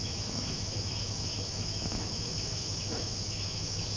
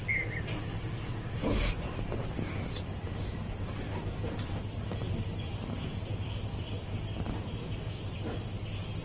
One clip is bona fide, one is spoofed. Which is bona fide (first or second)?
second